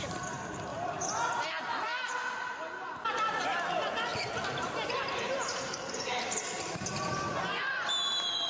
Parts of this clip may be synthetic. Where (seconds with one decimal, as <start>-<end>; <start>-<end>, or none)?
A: 0.7-1.3; 4.1-7.5